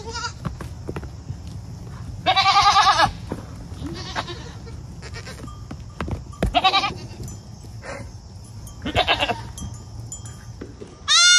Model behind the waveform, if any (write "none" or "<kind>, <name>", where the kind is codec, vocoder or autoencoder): none